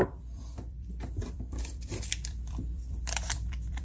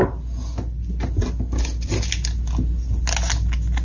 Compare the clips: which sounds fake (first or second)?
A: first